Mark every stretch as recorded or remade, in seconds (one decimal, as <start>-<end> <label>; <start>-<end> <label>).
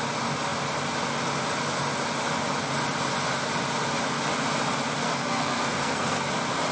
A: 0.0-5.0 recorded; 5.0-6.3 remade; 6.3-6.7 recorded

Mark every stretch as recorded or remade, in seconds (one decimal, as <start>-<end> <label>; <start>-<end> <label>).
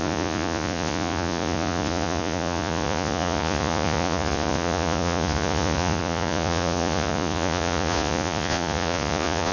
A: 0.0-9.5 remade